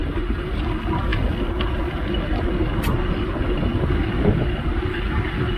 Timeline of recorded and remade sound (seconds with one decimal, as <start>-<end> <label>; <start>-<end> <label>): 0.0-0.6 remade; 0.6-5.6 recorded